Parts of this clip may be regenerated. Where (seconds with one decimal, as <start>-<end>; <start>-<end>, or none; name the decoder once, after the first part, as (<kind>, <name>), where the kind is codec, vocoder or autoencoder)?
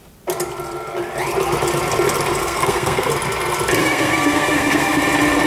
2.4-3.1 (codec, SNAC); 3.8-5.0